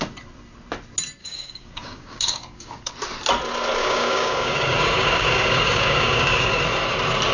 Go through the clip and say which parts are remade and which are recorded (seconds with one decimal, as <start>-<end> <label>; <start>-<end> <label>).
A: 0.0-1.2 recorded; 1.2-2.9 remade; 2.9-3.8 recorded; 3.8-6.6 remade; 6.6-7.3 recorded